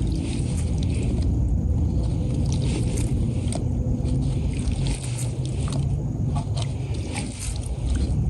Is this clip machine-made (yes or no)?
no